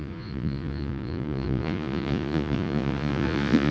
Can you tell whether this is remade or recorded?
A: remade